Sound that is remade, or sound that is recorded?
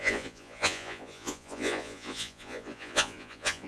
remade